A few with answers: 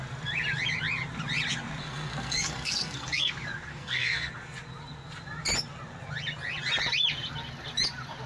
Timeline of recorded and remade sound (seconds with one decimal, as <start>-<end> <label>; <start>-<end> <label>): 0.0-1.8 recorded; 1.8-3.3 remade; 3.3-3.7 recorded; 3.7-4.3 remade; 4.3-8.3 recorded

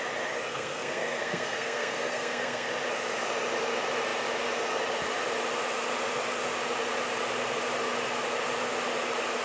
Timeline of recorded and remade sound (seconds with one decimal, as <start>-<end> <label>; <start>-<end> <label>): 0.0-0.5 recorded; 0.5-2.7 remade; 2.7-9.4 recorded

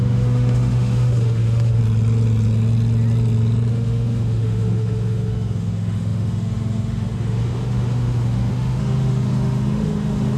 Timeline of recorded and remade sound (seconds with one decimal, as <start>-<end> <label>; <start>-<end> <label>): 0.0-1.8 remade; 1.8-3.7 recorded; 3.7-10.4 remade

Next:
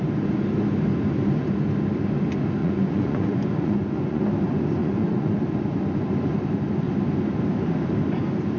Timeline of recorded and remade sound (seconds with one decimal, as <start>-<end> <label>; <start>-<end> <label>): 0.0-2.6 recorded; 2.6-4.2 remade; 4.2-4.8 recorded; 4.8-5.4 remade; 5.4-8.6 recorded